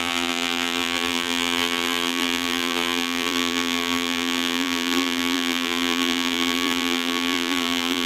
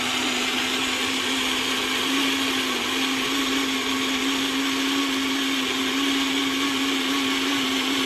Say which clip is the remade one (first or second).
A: first